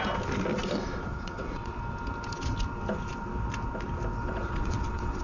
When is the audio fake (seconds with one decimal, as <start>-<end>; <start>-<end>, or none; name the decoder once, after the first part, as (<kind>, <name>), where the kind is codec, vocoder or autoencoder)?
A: 1.1-1.8 (vocoder, WaveNeXt); 4.2-5.2